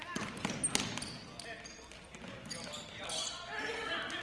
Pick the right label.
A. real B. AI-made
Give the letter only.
A